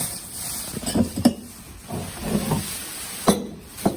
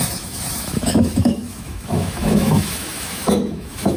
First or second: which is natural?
first